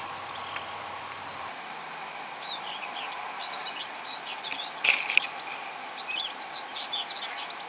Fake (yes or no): no